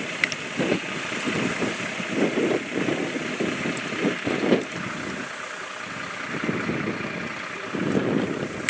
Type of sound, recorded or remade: recorded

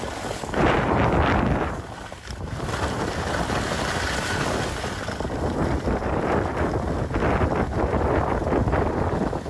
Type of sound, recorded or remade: recorded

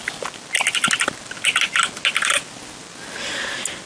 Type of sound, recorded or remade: recorded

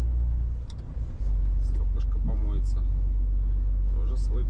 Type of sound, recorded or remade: recorded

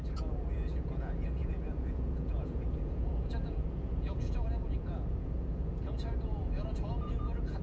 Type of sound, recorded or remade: remade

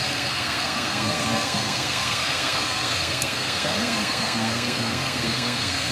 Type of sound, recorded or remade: remade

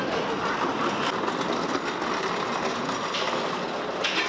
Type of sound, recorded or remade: recorded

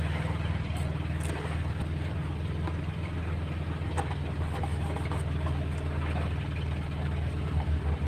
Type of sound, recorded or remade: recorded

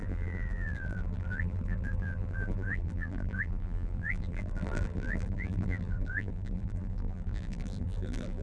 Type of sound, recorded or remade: remade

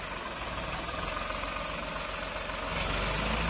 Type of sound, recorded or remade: recorded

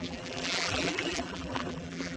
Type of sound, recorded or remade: remade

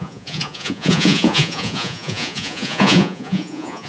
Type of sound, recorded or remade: remade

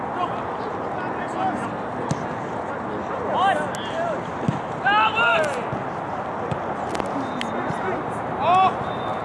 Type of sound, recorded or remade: recorded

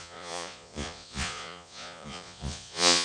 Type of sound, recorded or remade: remade